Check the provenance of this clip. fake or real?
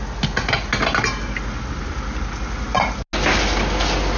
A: real